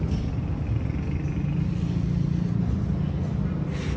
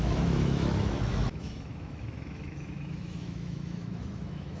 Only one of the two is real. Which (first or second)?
first